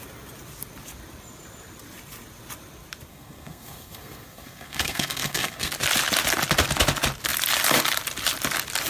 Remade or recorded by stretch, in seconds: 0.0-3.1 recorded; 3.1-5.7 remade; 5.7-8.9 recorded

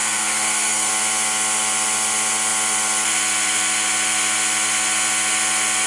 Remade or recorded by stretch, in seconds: 0.0-0.9 remade; 0.9-5.9 recorded

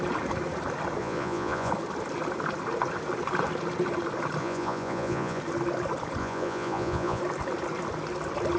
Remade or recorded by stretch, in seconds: 0.0-1.0 recorded; 1.0-1.7 remade; 1.7-4.4 recorded; 4.4-5.4 remade; 5.4-6.2 recorded; 6.2-7.2 remade; 7.2-8.6 recorded

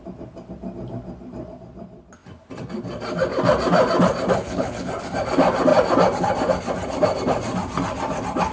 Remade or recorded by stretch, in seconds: 0.0-4.4 recorded; 4.4-4.9 remade; 4.9-8.5 recorded

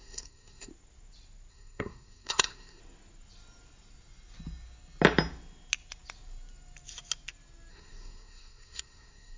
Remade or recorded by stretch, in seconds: 0.0-0.7 remade; 0.7-1.5 recorded; 1.5-2.8 remade; 2.8-7.7 recorded; 7.7-9.4 remade

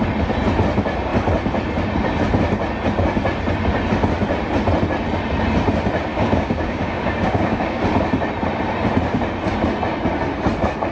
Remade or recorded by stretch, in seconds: 0.0-6.1 recorded; 6.1-7.8 remade; 7.8-10.9 recorded